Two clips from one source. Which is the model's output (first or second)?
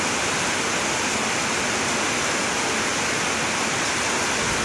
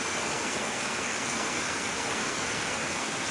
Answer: second